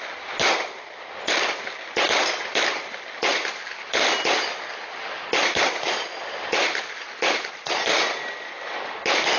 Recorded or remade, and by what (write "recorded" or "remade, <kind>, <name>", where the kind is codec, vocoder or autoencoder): recorded